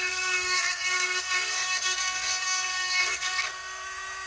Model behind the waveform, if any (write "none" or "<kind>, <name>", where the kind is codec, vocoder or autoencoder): codec, SNAC